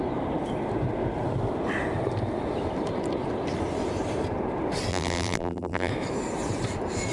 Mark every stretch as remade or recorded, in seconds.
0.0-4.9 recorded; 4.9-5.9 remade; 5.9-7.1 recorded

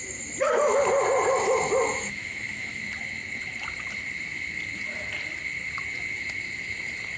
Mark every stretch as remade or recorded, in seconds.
0.0-1.9 recorded; 1.9-2.8 remade; 2.8-7.2 recorded

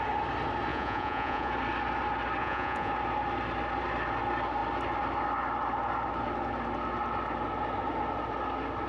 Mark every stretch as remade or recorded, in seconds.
0.0-0.7 recorded; 0.7-1.5 remade; 1.5-2.4 recorded; 2.4-2.9 remade; 2.9-8.9 recorded

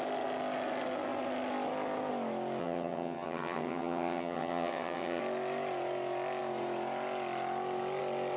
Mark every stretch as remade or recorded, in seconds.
0.0-2.6 recorded; 2.6-5.2 remade; 5.2-8.4 recorded

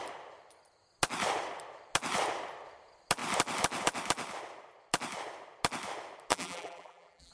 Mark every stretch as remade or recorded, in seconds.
0.0-6.3 recorded; 6.3-7.3 remade